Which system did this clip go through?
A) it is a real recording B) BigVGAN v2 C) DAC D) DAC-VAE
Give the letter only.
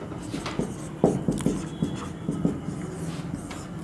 A